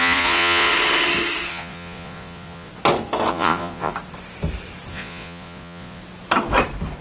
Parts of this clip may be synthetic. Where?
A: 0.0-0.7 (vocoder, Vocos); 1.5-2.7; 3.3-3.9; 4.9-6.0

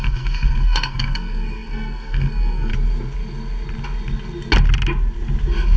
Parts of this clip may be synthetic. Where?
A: 0.0-2.7 (codec, SNAC)

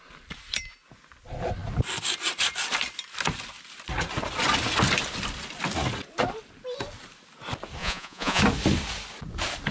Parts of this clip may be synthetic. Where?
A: 7.8-8.4 (vocoder, Vocos)

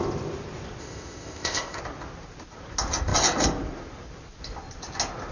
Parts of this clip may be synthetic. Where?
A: 0.8-1.8 (codec, ZipCodec)

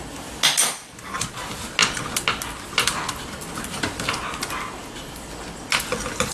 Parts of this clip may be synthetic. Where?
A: none

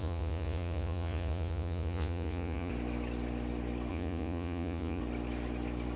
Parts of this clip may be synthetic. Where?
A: 0.0-2.7 (vocoder, Vocos); 3.9-5.0

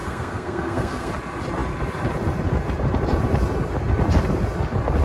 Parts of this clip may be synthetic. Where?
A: 0.0-1.1 (codec, SNAC)

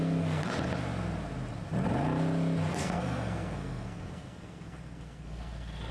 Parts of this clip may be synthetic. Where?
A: 0.0-0.5 (codec, SNAC); 2.7-5.9